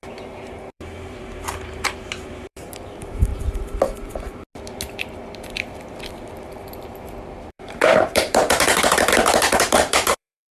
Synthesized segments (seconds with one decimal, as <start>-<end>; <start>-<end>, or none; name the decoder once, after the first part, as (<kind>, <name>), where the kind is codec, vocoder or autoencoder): 0.0-3.3 (vocoder, BigVGAN v2); 7.5-10.5